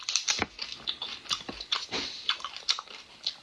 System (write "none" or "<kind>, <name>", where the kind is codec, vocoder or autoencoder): none